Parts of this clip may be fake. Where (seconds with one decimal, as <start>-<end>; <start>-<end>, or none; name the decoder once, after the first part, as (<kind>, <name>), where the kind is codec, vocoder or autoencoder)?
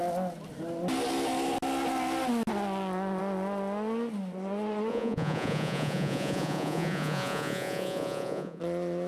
4.9-8.6 (vocoder, Vocos)